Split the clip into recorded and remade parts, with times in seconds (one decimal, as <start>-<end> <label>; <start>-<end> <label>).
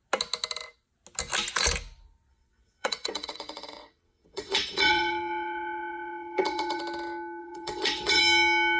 0.0-2.3 recorded; 2.3-6.8 remade; 6.8-7.4 recorded; 7.4-8.2 remade; 8.2-8.8 recorded